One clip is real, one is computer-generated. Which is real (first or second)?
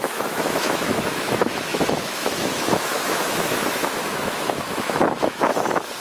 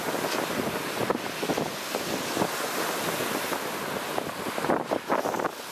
second